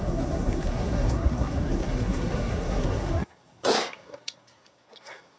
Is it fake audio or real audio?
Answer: fake